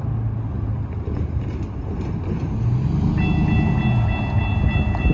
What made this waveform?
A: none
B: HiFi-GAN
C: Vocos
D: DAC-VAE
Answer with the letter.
A